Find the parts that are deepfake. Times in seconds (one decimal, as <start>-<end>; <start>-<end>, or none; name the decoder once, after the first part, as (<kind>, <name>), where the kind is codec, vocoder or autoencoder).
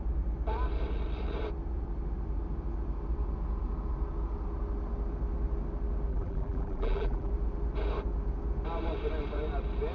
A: 6.1-7.3 (vocoder, BigVGAN v2)